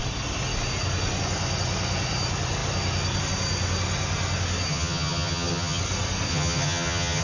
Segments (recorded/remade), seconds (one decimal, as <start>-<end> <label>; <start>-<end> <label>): 0.0-4.7 recorded; 4.7-5.8 remade; 5.8-6.3 recorded; 6.3-7.2 remade